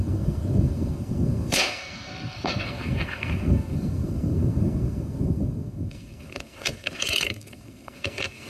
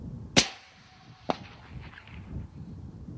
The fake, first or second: first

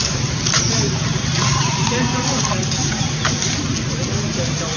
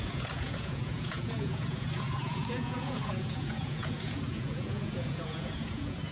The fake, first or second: second